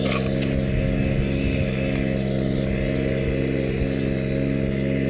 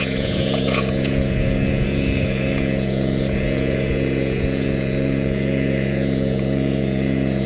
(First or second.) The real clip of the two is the first